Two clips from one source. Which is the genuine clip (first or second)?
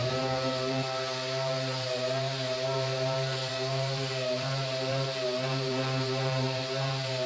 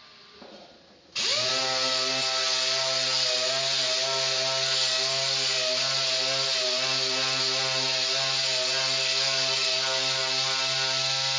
second